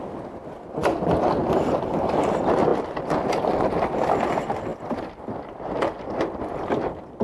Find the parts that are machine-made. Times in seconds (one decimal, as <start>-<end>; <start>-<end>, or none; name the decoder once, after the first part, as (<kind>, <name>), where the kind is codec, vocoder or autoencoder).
4.7-6.7 (vocoder, BigVGAN v2)